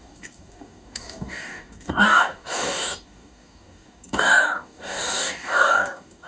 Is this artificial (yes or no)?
yes